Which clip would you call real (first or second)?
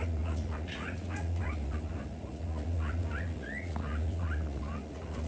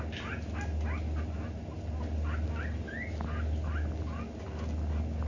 second